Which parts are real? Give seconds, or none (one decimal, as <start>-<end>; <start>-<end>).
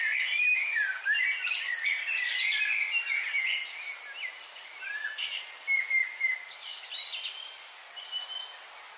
0.0-9.0